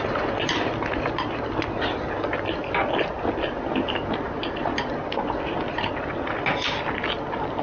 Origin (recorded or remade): recorded